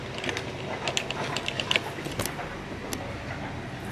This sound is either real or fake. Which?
real